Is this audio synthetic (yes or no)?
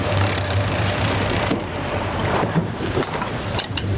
yes